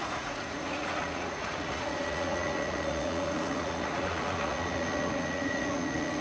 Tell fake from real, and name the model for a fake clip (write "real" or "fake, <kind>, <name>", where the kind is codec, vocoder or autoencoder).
fake, vocoder, Vocos